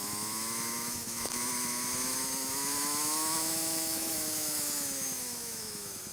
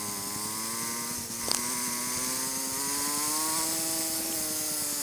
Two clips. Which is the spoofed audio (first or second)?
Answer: first